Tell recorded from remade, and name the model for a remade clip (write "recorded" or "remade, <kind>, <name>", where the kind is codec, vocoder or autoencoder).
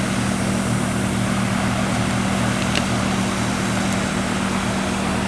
recorded